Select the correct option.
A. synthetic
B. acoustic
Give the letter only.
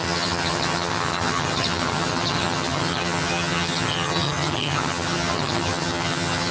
A